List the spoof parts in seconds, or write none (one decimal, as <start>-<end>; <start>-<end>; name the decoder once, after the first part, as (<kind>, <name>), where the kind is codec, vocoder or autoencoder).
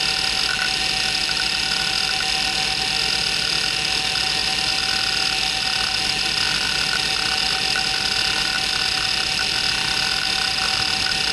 none